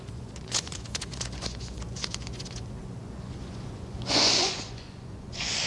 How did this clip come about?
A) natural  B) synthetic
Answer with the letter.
B